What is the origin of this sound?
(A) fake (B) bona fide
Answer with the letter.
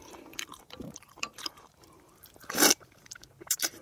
A